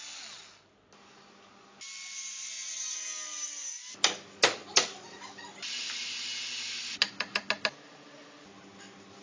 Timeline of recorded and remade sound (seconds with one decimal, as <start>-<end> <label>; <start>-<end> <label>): 0.0-9.2 recorded